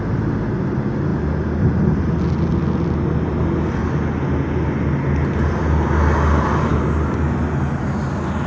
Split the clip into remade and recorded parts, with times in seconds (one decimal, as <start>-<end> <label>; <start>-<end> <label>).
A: 0.0-8.5 recorded